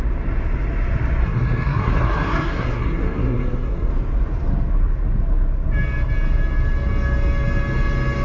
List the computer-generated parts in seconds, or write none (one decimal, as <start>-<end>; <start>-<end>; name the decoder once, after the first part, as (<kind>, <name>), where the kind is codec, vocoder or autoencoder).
1.2-3.9 (codec, SNAC)